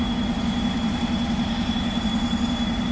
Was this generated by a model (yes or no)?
yes